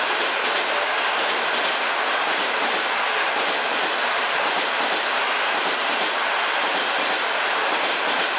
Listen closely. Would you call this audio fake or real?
real